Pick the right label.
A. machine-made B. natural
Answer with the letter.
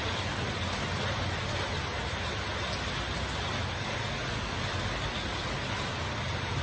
B